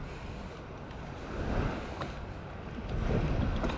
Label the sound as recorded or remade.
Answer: recorded